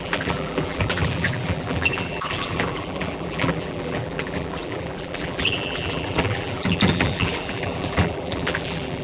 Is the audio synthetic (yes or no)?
yes